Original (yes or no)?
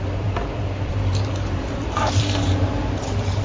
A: no